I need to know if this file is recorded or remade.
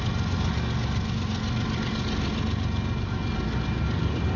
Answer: recorded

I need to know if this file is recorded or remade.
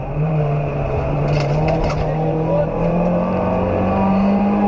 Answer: remade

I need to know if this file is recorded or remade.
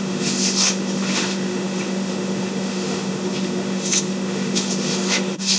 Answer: remade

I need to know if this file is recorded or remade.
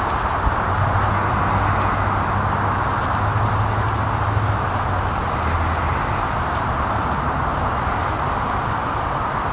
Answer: recorded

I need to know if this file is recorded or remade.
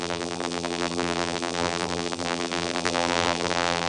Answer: remade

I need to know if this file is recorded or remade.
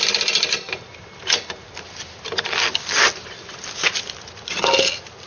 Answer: recorded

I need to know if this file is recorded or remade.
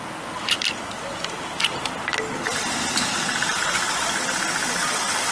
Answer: recorded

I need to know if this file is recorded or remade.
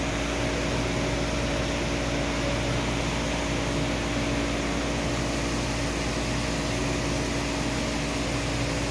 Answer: recorded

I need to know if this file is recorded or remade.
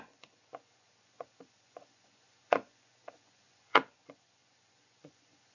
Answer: remade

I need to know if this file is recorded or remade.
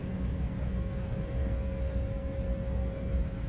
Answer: remade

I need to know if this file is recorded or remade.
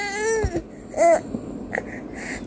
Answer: recorded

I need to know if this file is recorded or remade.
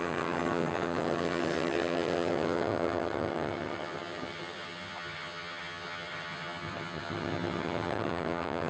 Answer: remade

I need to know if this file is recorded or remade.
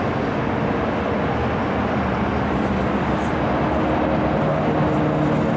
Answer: recorded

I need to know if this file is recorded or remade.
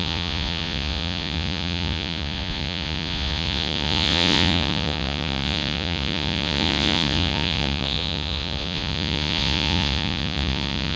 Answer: remade